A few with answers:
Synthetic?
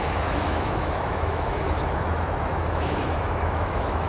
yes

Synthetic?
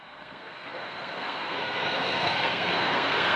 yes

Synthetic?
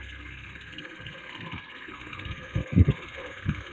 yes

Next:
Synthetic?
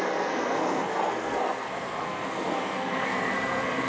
yes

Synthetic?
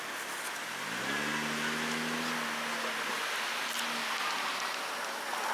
no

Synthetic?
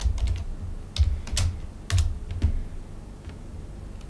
no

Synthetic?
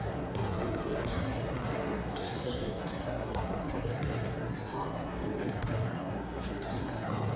yes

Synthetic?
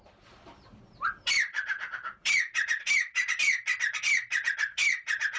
yes